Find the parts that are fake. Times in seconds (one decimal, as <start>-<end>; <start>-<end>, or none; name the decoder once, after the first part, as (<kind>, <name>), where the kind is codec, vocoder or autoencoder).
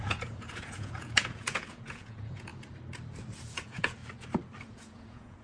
0.0-2.5 (vocoder, Vocos); 3.4-4.0; 4.7-5.4